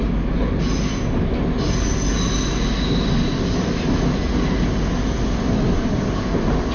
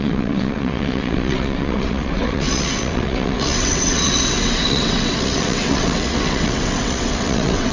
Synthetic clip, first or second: second